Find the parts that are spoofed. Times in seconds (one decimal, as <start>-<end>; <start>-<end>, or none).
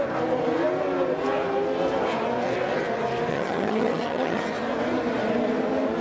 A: 3.3-4.4